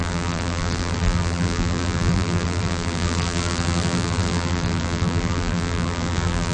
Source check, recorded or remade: remade